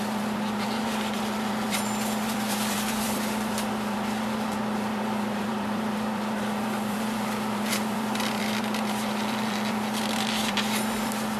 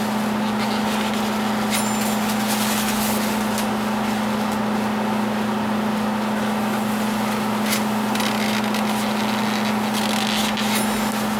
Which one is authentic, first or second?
second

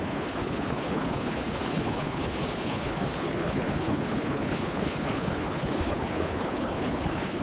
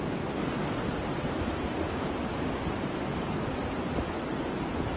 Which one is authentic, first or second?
second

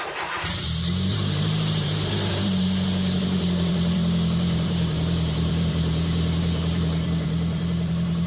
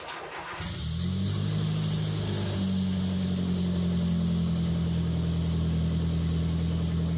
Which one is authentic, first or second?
second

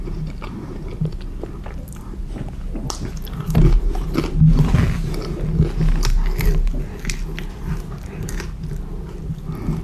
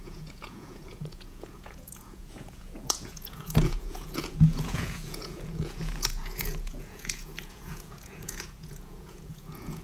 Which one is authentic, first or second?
first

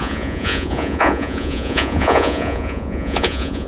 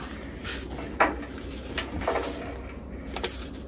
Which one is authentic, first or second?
second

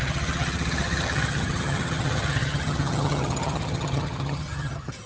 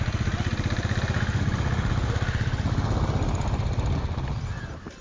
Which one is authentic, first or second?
second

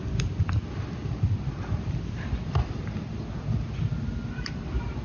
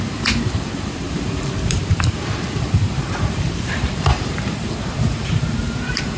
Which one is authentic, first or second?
first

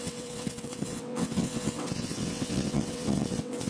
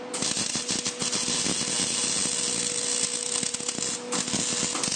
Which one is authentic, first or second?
second